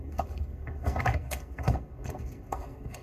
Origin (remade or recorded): remade